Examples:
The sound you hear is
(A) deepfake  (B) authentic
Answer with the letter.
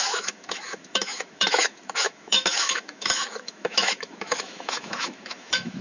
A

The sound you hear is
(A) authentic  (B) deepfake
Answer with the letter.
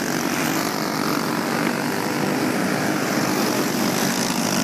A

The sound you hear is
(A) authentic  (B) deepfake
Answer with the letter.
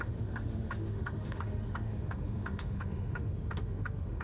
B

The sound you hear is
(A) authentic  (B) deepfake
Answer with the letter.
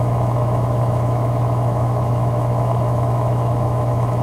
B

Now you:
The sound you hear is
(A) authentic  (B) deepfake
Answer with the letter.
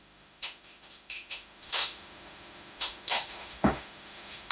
B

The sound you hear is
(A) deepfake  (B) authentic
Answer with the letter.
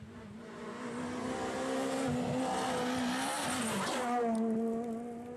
B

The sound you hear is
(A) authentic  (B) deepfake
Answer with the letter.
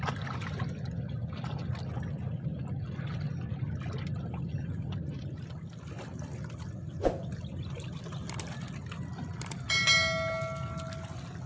A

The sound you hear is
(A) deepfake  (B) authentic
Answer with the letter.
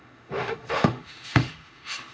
A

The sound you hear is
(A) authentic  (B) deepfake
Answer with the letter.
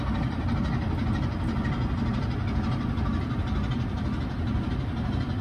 A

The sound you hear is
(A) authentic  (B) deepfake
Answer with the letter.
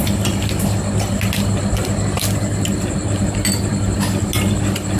A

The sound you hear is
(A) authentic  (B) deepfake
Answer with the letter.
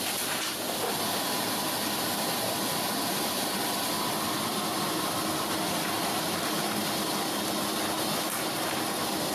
A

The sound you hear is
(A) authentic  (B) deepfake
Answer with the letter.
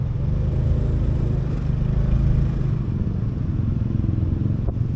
A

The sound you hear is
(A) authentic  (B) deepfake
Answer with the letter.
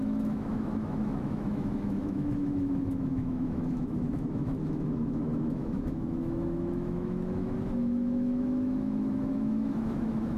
B